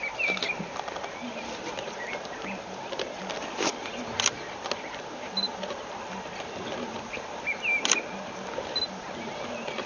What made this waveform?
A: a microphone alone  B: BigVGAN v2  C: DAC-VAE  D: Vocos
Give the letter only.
A